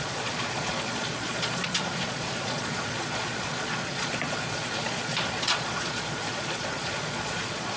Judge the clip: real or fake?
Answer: fake